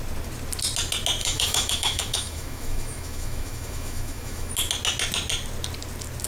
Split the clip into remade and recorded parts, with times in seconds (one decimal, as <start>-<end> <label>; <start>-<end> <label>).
0.0-1.2 recorded; 1.2-4.5 remade; 4.5-6.3 recorded